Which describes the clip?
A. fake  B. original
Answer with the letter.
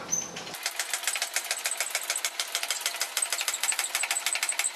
B